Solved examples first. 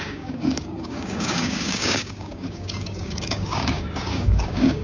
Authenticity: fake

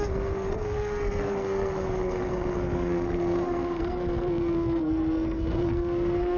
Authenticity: fake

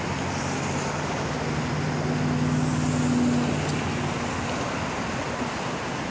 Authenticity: real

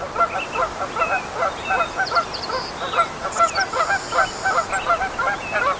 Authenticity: real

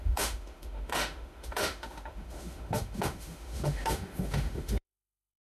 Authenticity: fake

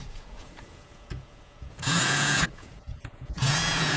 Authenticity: fake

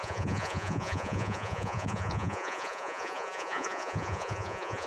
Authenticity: fake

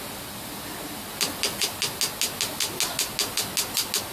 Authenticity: real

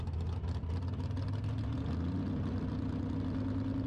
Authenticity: real